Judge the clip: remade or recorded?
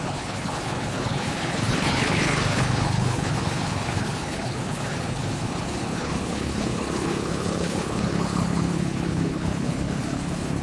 remade